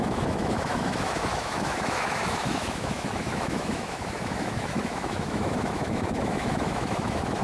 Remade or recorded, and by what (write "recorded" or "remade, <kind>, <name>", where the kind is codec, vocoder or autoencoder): remade, autoencoder, DAC-VAE